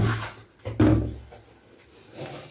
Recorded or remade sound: recorded